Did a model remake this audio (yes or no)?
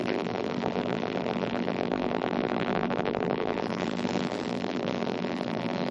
yes